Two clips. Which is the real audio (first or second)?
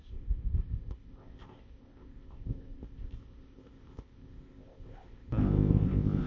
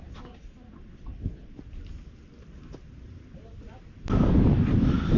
second